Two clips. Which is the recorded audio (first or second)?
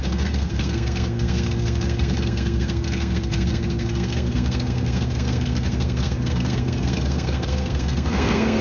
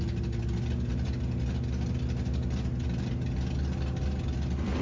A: second